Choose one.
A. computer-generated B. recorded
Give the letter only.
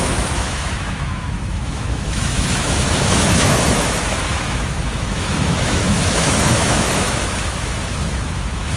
A